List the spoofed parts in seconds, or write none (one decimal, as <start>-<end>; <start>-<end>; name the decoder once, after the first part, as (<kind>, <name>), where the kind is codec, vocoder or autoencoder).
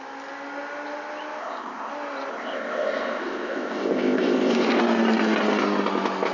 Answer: 1.4-1.9 (codec, ZipCodec); 2.3-4.8